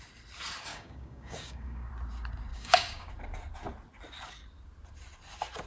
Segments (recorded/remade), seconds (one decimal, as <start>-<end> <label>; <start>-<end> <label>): 0.0-0.7 recorded; 0.7-1.9 remade; 1.9-2.5 recorded; 2.5-3.1 remade; 3.1-5.7 recorded